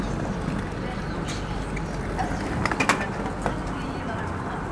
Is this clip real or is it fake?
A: real